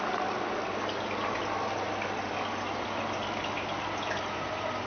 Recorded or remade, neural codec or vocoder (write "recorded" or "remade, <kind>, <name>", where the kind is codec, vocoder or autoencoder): recorded